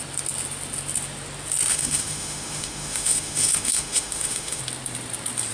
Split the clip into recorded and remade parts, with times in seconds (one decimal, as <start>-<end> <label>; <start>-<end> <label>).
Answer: 0.0-1.7 recorded; 1.7-4.6 remade; 4.6-5.5 recorded